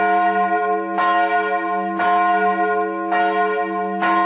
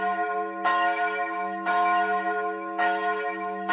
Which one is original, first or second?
first